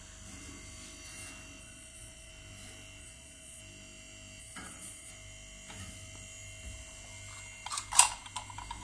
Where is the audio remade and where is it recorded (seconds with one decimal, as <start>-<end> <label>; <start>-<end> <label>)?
0.0-1.6 recorded; 1.6-2.3 remade; 2.3-3.0 recorded; 3.0-3.6 remade; 3.6-4.4 recorded; 4.4-5.1 remade; 5.1-8.8 recorded